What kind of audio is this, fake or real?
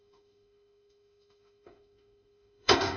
fake